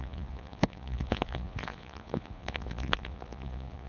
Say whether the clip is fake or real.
fake